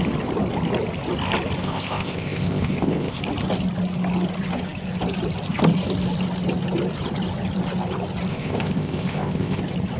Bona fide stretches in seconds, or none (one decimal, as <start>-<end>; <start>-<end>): 0.0-1.6; 3.2-8.3; 9.6-10.0